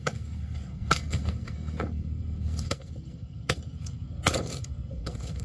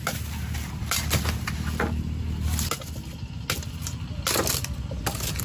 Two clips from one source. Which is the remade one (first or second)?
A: first